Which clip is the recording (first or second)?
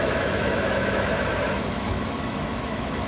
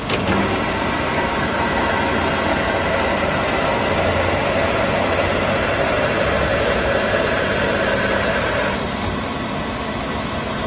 second